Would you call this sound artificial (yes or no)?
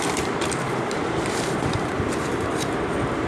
yes